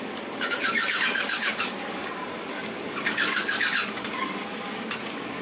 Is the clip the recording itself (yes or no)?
no